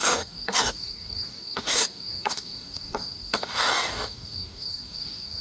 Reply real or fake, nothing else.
fake